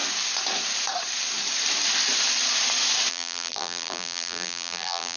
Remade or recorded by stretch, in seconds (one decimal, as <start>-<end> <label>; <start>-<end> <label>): 0.0-3.1 recorded; 3.1-5.2 remade